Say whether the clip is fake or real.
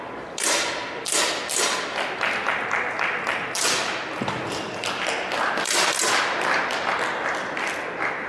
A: real